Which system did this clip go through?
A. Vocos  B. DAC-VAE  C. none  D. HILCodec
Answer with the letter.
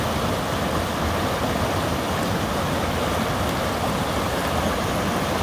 C